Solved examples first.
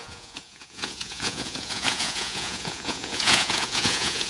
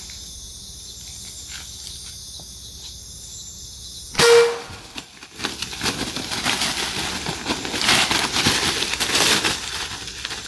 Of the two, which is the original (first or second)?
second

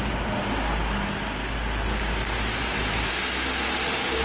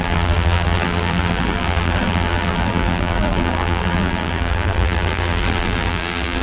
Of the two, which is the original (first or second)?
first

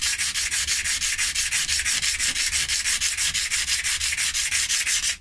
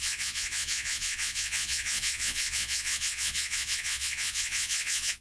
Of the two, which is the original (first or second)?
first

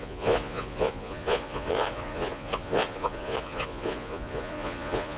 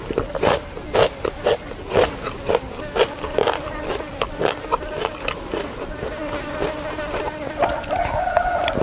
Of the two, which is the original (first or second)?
second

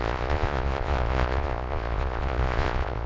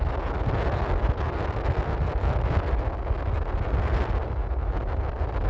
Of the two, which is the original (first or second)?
second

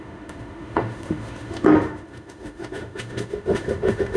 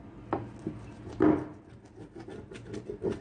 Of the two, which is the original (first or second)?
second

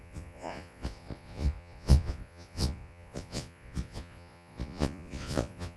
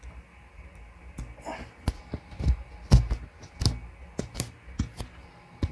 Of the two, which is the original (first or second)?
second